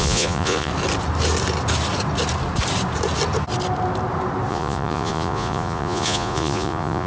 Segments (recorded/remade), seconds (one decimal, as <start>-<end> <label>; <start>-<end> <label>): 0.0-0.7 remade; 0.7-4.5 recorded; 4.5-7.1 remade

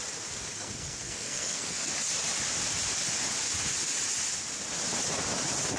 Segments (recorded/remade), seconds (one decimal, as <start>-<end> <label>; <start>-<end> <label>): 0.0-0.5 recorded; 0.5-1.9 remade; 1.9-5.8 recorded

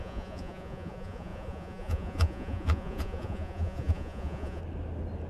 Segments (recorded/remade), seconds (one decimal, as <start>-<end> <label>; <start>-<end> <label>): 0.0-4.6 remade; 4.6-5.3 recorded

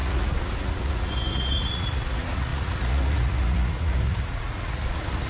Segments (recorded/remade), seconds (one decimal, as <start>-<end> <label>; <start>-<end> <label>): 0.0-5.3 remade

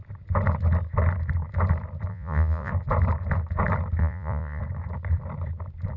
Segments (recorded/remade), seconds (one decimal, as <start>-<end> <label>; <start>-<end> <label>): 0.0-2.1 recorded; 2.1-2.7 remade; 2.7-4.0 recorded; 4.0-4.6 remade; 4.6-6.0 recorded

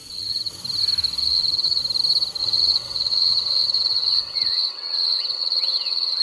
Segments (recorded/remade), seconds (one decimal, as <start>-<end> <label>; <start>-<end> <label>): 0.0-0.5 remade; 0.5-1.2 recorded; 1.2-1.8 remade; 1.8-2.4 recorded; 2.4-6.2 remade

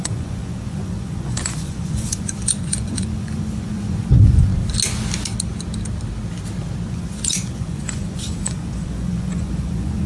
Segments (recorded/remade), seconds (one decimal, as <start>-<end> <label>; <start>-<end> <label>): 0.0-4.5 remade; 4.5-6.9 recorded; 6.9-10.1 remade

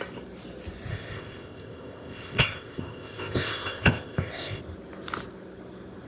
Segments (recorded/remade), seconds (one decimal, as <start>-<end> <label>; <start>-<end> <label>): 0.0-0.9 recorded; 0.9-4.6 remade; 4.6-6.1 recorded